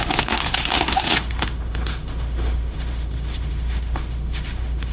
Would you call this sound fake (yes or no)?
yes